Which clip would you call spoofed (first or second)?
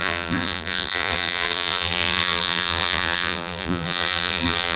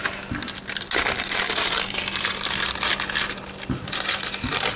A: first